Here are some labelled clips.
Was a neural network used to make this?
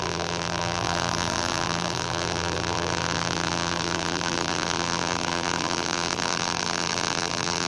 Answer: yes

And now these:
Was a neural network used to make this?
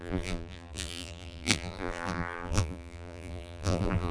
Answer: yes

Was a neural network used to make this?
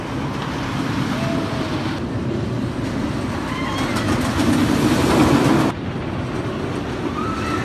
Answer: no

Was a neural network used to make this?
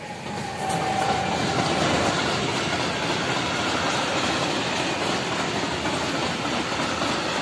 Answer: no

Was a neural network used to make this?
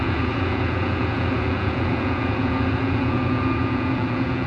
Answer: yes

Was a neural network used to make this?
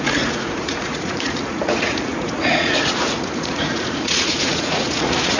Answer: yes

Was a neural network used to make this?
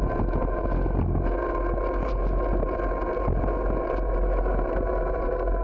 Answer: no